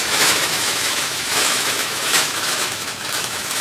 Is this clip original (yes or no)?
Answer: no